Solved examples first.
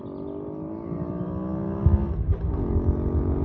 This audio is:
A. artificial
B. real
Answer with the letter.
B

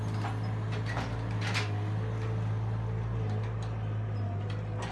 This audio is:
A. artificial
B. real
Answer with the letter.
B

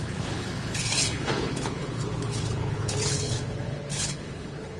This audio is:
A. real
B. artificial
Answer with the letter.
B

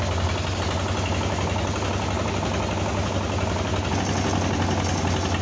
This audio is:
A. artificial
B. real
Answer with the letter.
B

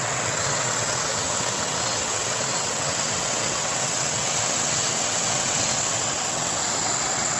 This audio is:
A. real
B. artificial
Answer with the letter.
B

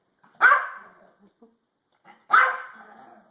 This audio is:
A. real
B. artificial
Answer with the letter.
A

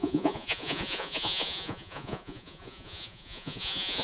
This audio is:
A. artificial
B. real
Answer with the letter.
A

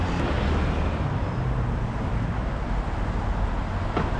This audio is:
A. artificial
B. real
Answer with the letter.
B